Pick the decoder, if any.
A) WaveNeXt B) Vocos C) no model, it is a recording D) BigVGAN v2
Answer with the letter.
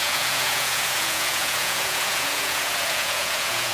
B